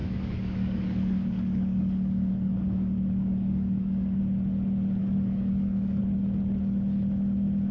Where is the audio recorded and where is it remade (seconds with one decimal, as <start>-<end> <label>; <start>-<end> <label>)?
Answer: 0.0-4.2 remade; 4.2-5.0 recorded; 5.0-6.0 remade; 6.0-7.7 recorded